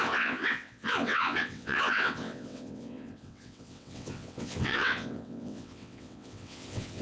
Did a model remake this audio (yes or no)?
yes